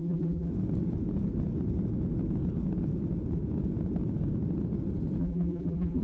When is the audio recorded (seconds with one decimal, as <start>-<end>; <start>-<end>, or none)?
0.5-5.2